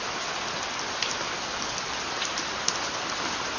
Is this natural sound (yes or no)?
yes